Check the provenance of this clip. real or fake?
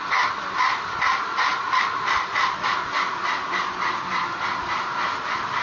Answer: real